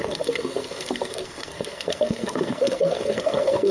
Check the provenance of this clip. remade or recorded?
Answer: remade